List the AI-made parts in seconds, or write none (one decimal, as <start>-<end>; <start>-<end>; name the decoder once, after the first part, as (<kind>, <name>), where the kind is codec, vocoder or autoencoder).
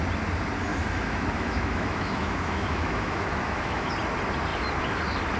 0.7-3.9 (autoencoder, DAC-VAE)